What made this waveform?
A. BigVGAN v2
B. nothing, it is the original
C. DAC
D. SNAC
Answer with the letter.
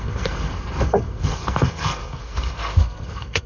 D